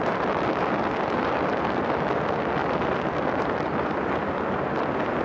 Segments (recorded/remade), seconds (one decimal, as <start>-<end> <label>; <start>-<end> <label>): 0.0-5.2 recorded